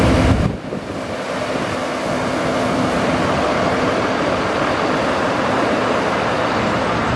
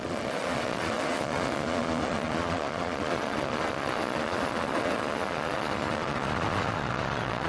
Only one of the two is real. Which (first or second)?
first